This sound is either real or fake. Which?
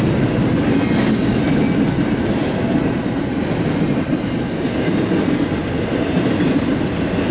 real